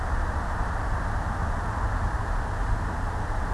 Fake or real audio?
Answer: real